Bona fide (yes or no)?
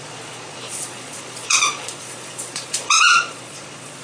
no